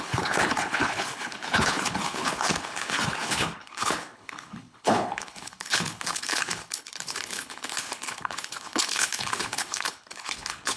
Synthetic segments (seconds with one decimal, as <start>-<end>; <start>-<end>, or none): 0.0-10.8